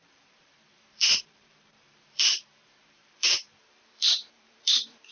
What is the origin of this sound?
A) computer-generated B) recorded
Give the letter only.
A